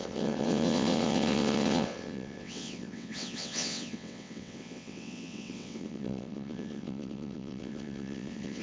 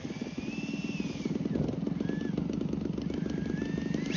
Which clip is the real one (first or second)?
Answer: second